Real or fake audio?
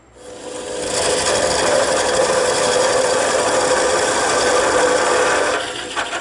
real